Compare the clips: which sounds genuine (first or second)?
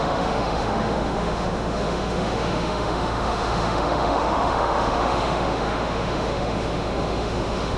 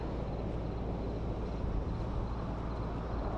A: second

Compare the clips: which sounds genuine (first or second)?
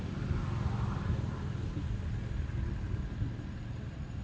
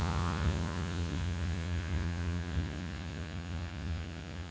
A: first